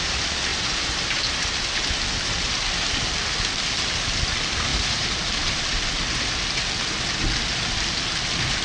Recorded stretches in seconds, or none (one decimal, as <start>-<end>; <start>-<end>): 0.0-0.5; 1.1-4.7; 5.6-8.6